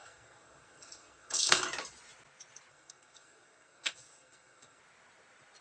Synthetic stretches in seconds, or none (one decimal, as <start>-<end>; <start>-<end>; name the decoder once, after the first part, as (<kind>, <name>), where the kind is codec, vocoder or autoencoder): 0.0-1.6 (codec, SNAC); 2.7-4.8